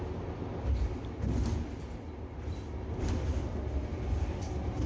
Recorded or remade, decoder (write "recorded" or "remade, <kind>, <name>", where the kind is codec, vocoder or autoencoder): recorded